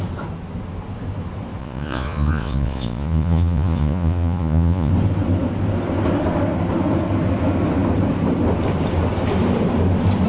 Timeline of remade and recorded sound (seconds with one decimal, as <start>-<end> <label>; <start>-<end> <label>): 0.0-1.6 recorded; 1.6-4.9 remade; 4.9-10.3 recorded